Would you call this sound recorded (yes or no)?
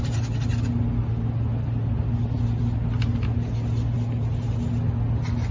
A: yes